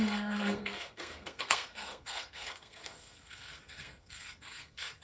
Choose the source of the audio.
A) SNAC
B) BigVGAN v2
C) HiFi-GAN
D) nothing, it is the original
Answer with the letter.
A